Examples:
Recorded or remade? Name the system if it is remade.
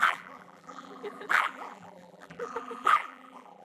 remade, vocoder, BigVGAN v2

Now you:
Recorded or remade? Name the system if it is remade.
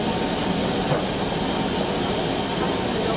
recorded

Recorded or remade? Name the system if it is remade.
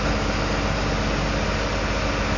recorded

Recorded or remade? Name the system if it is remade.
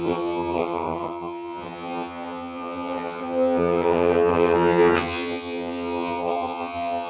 remade, vocoder, HiFi-GAN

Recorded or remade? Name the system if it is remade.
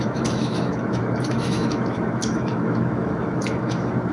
remade, autoencoder, DAC-VAE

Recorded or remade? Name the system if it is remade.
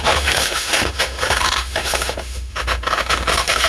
remade, autoencoder, DAC-VAE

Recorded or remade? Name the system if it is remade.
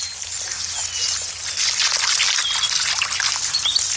recorded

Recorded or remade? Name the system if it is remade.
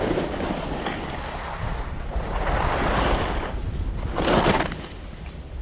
recorded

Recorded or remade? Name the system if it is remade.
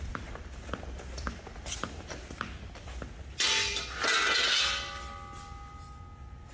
recorded